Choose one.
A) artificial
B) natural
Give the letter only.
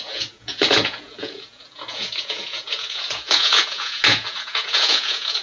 A